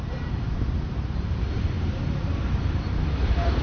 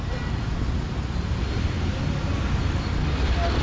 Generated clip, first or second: first